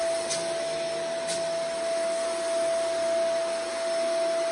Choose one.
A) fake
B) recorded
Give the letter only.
B